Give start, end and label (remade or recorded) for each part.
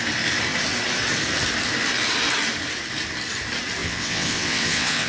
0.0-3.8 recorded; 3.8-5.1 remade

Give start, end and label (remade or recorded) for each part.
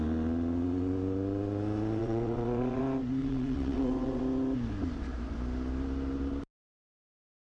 0.0-2.0 recorded; 2.0-2.8 remade; 2.8-3.2 recorded; 3.2-4.2 remade; 4.2-7.5 recorded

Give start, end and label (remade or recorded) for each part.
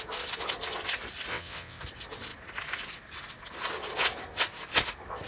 0.0-1.3 recorded; 1.3-1.8 remade; 1.8-5.3 recorded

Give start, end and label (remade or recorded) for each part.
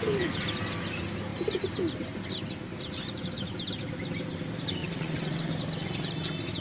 0.0-4.8 recorded; 4.8-5.5 remade; 5.5-6.6 recorded